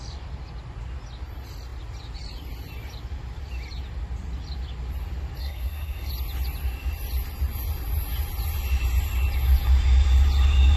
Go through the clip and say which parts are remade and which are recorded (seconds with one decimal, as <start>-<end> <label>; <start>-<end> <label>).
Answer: 0.0-5.4 recorded; 5.4-6.1 remade; 6.1-10.8 recorded